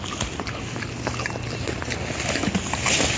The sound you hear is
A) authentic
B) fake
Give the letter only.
A